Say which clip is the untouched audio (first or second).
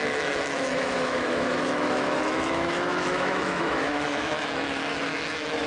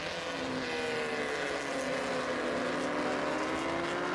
second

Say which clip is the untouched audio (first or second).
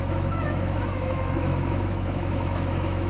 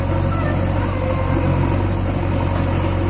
second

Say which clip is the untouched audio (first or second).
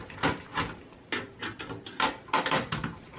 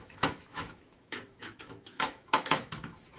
first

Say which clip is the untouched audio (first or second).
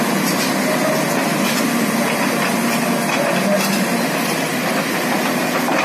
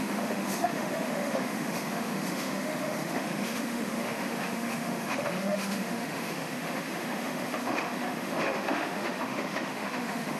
first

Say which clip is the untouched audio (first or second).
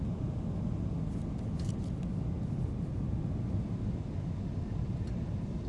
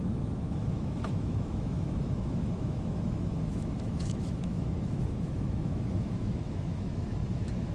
first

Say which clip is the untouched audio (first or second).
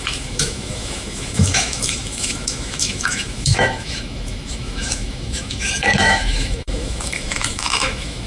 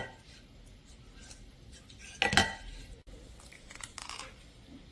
second